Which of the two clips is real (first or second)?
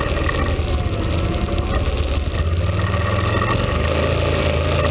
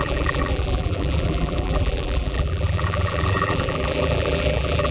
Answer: first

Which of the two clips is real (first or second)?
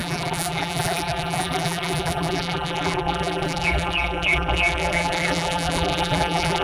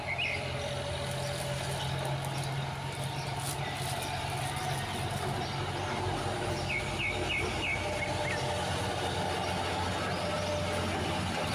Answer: second